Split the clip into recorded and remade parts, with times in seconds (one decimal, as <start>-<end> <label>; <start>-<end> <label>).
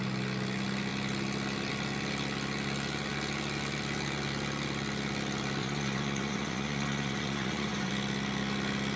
0.0-5.6 recorded; 5.6-7.9 remade; 7.9-9.0 recorded